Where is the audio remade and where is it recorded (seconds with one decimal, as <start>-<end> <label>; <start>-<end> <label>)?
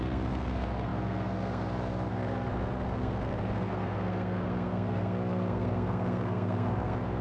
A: 0.0-7.2 remade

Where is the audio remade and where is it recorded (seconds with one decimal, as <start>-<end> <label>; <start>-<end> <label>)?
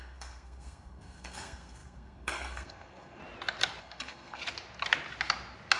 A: 0.0-3.2 remade; 3.2-3.8 recorded; 3.8-4.4 remade; 4.4-5.8 recorded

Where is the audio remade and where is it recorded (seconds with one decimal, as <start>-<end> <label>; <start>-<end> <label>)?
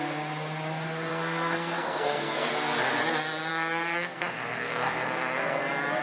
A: 0.0-1.1 recorded; 1.1-2.5 remade; 2.5-3.5 recorded; 3.5-5.6 remade; 5.6-6.0 recorded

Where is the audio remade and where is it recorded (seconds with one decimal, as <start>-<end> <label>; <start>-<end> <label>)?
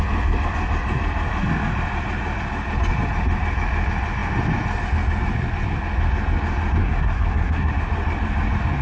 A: 0.0-6.8 recorded; 6.8-7.7 remade; 7.7-8.8 recorded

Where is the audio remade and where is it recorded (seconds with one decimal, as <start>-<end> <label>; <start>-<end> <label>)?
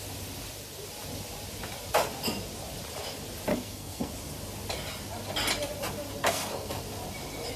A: 0.0-3.5 recorded; 3.5-4.1 remade; 4.1-6.2 recorded; 6.2-6.8 remade; 6.8-7.6 recorded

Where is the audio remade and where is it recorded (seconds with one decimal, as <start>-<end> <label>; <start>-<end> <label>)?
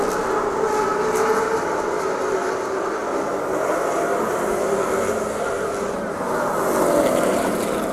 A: 0.0-7.9 recorded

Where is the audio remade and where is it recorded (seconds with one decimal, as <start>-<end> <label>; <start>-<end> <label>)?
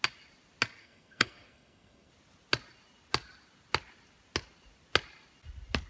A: 0.0-0.8 recorded; 0.8-2.1 remade; 2.1-5.9 recorded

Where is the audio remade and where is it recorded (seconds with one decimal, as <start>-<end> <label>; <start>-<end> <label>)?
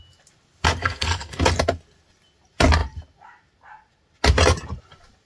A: 0.0-0.8 recorded; 0.8-1.4 remade; 1.4-5.3 recorded